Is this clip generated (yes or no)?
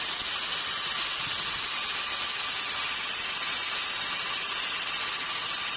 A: no